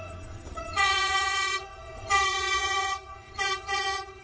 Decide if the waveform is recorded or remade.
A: remade